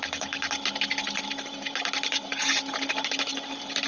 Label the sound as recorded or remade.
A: recorded